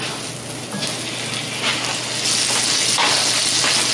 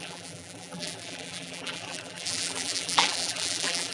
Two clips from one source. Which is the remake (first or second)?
second